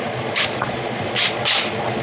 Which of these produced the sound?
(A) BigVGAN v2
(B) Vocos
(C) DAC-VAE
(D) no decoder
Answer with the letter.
B